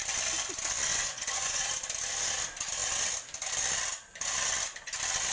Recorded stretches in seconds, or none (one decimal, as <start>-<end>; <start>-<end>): 0.0-0.9; 1.7-5.3